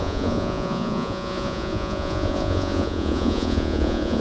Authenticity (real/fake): fake